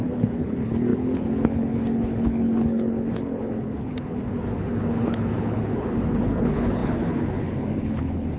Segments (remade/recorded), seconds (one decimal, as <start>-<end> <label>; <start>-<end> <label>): 0.0-8.4 remade